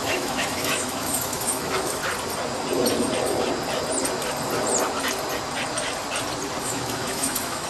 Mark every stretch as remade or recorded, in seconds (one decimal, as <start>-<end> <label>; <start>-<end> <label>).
0.0-2.0 remade; 2.0-6.6 recorded; 6.6-7.7 remade